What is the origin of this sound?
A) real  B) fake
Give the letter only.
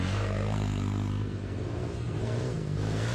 B